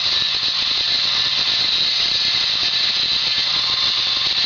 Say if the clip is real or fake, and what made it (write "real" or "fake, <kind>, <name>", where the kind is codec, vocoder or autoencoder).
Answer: real